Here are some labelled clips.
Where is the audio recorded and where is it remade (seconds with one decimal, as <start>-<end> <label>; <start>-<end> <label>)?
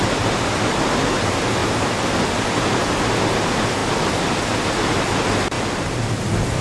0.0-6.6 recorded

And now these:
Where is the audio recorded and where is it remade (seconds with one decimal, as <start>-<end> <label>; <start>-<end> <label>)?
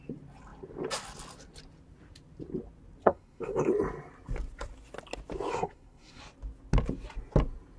0.0-3.0 recorded; 3.0-3.7 remade; 3.7-5.5 recorded; 5.5-6.2 remade; 6.2-7.8 recorded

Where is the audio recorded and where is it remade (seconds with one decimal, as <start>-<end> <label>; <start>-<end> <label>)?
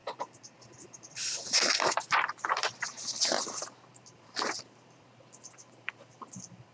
0.0-6.7 remade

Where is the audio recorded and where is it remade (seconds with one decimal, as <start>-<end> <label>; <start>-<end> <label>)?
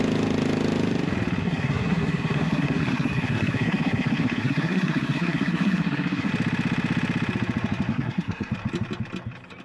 0.0-1.4 recorded; 1.4-6.3 remade; 6.3-7.9 recorded; 7.9-8.5 remade; 8.5-9.6 recorded